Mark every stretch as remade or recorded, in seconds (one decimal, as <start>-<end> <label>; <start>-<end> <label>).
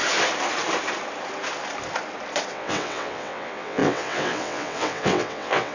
0.0-2.5 recorded; 2.5-5.7 remade